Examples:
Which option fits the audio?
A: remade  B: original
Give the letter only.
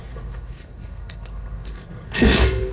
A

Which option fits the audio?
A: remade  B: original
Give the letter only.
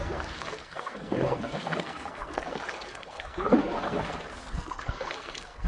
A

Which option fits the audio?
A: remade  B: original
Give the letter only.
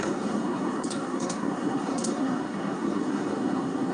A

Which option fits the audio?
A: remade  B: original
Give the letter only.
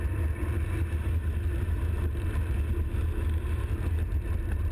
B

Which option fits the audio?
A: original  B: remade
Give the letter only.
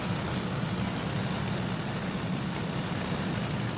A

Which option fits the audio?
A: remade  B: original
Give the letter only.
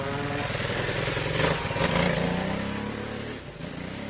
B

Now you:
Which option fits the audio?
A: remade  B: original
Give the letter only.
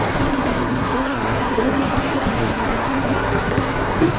A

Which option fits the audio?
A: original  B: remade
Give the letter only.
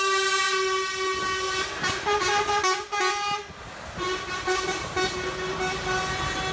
A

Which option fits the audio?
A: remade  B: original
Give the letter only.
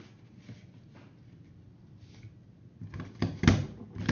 B